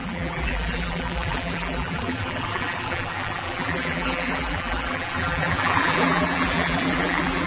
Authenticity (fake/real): fake